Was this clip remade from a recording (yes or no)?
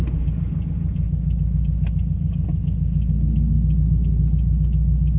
no